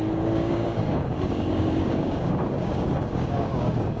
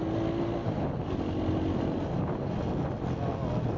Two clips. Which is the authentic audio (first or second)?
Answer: second